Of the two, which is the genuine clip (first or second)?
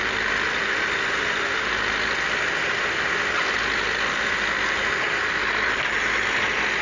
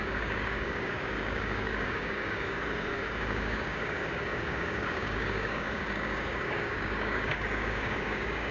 first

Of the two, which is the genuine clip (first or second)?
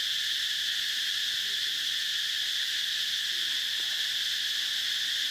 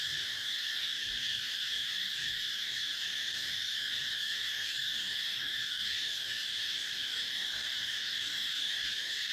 first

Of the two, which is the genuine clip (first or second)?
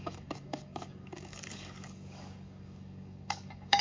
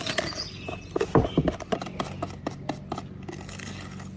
second